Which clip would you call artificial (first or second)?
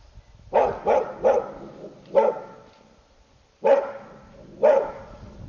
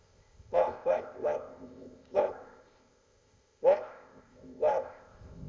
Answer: second